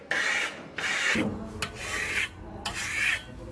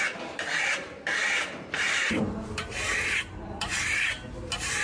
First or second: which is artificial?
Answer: second